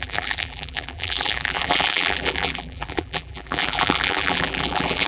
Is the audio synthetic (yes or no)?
yes